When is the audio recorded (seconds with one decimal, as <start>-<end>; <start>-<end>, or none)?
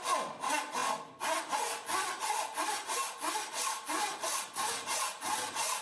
0.0-5.8